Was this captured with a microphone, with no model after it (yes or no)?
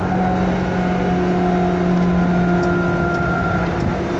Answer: yes